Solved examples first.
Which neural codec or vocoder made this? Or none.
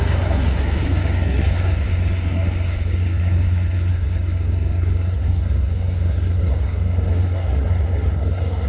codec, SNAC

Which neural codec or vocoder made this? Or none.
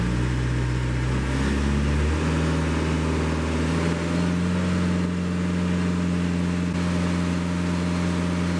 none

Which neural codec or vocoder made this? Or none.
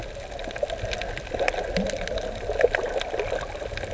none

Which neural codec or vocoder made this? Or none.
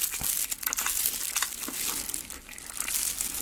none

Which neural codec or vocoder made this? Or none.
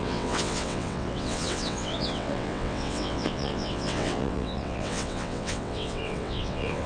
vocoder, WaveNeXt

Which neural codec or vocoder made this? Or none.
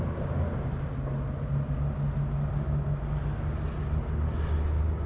none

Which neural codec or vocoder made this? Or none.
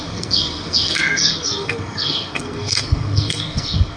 codec, SNAC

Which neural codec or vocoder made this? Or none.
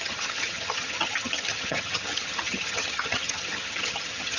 vocoder, HiFi-GAN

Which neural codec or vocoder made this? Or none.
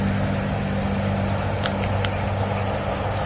none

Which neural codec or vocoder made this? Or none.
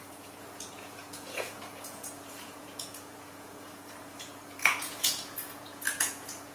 vocoder, Vocos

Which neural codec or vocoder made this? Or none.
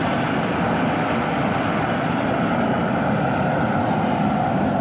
none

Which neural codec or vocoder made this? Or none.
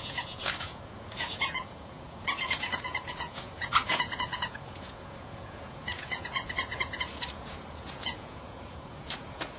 vocoder, Vocos